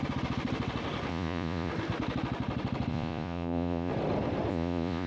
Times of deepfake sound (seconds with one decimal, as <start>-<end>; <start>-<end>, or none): 1.1-1.7; 2.9-3.9; 4.5-5.1